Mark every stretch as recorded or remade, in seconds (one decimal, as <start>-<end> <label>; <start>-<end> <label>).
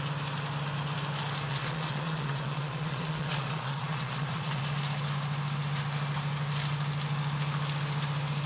0.0-1.5 recorded; 1.5-4.6 remade; 4.6-8.5 recorded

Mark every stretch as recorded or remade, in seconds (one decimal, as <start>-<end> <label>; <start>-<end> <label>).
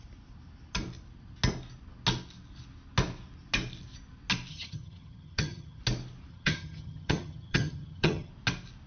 0.0-4.5 recorded; 4.5-5.8 remade; 5.8-6.3 recorded; 6.3-8.3 remade; 8.3-8.9 recorded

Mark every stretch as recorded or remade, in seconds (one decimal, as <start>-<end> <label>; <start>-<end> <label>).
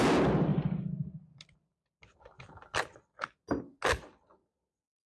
0.0-5.1 recorded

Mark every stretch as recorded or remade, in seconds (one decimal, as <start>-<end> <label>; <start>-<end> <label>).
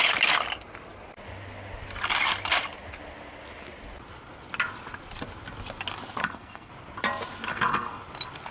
0.0-6.2 recorded; 6.2-6.7 remade; 6.7-7.5 recorded; 7.5-8.0 remade; 8.0-8.5 recorded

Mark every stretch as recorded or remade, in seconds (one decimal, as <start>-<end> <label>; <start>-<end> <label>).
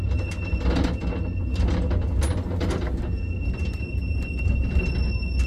0.0-5.5 recorded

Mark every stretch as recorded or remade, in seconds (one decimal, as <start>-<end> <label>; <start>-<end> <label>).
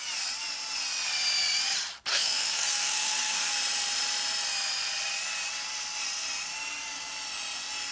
0.0-2.1 recorded; 2.1-3.5 remade; 3.5-7.9 recorded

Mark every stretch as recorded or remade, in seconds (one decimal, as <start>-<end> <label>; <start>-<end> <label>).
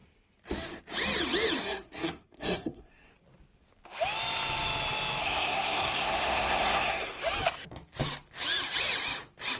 0.0-1.6 recorded; 1.6-3.1 remade; 3.1-5.2 recorded; 5.2-7.2 remade; 7.2-9.6 recorded